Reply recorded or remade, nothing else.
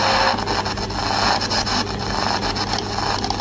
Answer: recorded